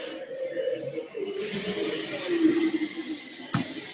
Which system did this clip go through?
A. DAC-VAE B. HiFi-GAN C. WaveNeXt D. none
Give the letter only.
D